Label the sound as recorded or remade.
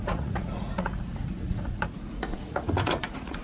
remade